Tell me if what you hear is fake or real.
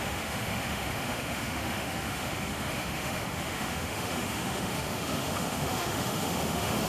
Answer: fake